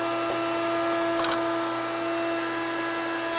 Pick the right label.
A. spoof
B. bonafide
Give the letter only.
B